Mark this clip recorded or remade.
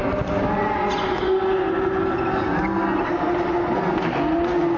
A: recorded